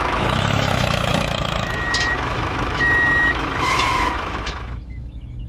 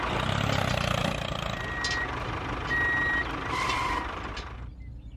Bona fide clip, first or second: second